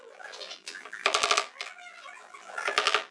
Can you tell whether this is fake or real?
fake